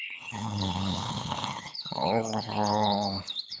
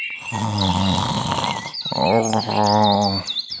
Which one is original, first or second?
second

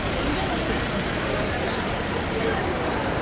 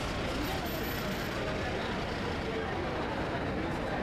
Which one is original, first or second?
second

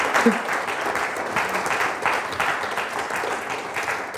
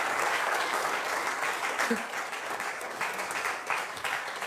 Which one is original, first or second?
first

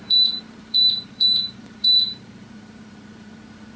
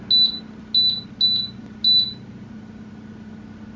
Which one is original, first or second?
second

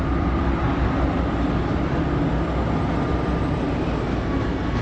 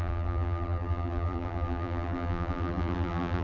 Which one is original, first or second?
first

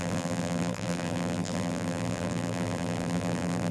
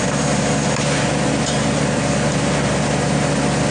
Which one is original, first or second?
second